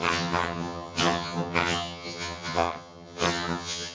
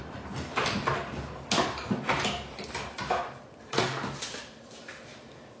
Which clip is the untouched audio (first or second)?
second